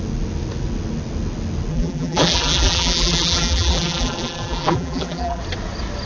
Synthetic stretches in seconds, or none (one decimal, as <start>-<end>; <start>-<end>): 1.7-5.4